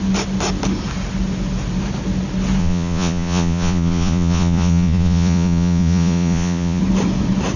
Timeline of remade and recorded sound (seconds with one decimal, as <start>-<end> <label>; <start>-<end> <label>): 0.0-2.6 recorded; 2.6-6.8 remade; 6.8-7.6 recorded